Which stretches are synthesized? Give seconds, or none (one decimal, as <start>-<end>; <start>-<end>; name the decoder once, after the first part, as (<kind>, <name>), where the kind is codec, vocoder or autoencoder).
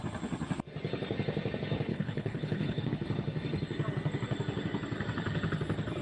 1.9-2.9 (codec, HILCodec)